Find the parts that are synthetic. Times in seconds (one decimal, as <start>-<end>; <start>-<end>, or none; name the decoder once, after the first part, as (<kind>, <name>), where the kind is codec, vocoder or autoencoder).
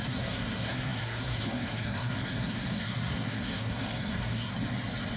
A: 0.0-4.5 (codec, SNAC)